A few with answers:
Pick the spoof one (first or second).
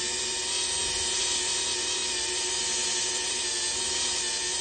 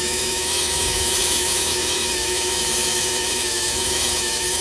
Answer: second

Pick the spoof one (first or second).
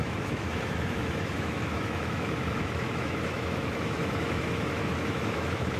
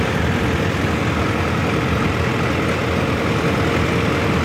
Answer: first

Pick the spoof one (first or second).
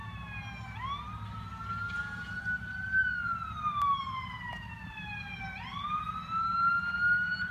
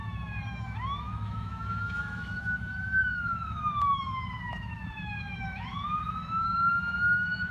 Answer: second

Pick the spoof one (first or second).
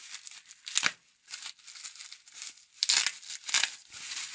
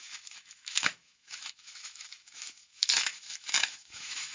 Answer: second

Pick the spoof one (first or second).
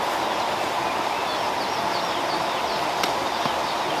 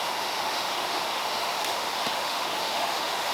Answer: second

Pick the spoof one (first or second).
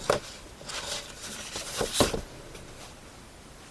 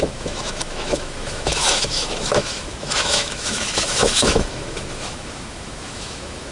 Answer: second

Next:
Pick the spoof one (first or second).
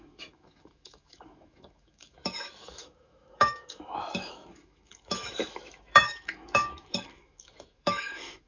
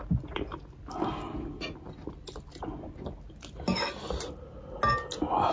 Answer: first